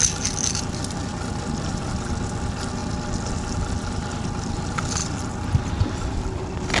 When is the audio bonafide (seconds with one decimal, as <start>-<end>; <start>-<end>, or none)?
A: 0.0-6.8